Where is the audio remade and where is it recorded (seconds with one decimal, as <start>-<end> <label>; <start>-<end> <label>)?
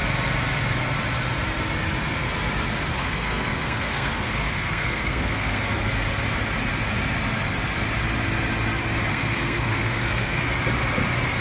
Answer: 0.0-2.9 recorded; 2.9-5.6 remade; 5.6-9.1 recorded; 9.1-10.4 remade; 10.4-11.4 recorded